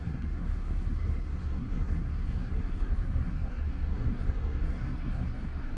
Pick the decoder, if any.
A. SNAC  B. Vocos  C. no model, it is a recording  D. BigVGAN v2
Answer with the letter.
A